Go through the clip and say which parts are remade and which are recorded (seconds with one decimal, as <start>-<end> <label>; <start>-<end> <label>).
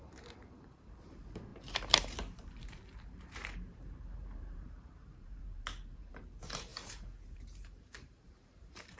0.0-9.0 remade